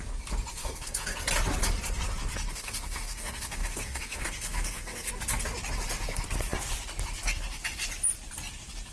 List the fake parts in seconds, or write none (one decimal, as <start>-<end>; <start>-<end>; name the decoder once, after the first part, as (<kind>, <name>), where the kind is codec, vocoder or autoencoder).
0.5-1.2 (codec, SNAC); 2.5-5.1